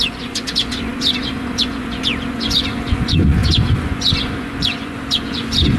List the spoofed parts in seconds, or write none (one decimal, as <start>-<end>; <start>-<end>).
0.0-5.8